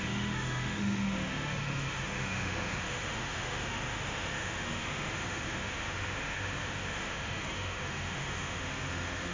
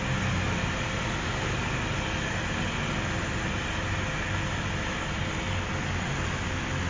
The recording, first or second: second